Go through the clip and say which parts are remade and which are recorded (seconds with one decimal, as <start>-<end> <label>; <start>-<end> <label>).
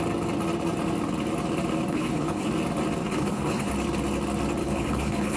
0.0-1.9 recorded; 1.9-2.5 remade; 2.5-3.0 recorded; 3.0-3.7 remade; 3.7-4.6 recorded; 4.6-5.4 remade